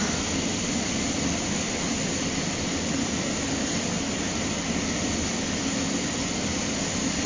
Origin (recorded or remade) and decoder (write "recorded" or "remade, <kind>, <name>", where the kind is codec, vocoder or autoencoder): recorded